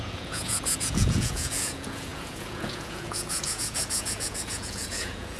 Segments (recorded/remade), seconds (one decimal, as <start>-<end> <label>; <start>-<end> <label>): 0.0-5.4 remade